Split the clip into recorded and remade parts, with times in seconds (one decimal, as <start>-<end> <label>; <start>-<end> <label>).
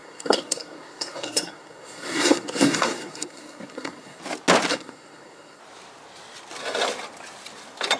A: 0.0-4.2 remade; 4.2-4.7 recorded; 4.7-5.6 remade; 5.6-8.0 recorded